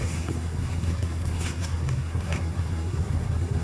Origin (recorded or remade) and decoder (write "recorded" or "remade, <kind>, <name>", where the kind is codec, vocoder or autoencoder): remade, codec, SNAC